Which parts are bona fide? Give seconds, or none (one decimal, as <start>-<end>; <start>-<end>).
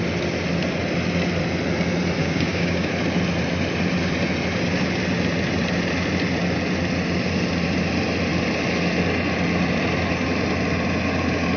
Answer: 0.0-2.2; 2.9-11.6